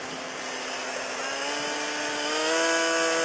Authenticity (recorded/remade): recorded